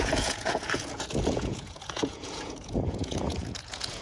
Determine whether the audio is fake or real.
fake